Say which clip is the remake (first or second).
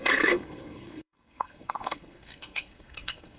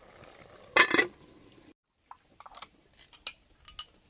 first